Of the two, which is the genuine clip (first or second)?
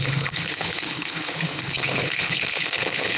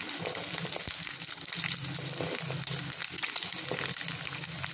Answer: second